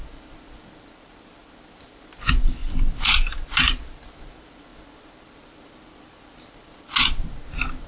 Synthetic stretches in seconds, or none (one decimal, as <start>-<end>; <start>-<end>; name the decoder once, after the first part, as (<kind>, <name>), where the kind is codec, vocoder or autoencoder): 2.6-4.2 (vocoder, BigVGAN v2)